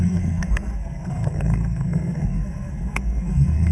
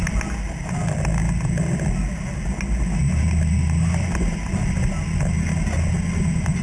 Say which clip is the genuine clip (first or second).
second